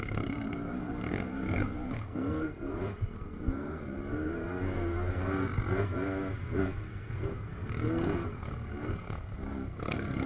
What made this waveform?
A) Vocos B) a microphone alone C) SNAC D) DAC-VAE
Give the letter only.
C